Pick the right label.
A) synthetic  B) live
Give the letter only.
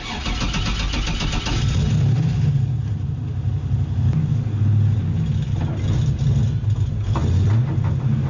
B